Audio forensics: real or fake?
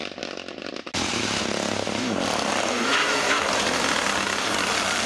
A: real